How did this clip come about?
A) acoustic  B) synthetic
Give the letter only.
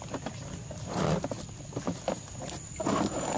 A